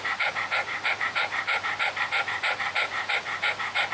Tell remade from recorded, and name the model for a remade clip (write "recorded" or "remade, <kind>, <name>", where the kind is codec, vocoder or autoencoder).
recorded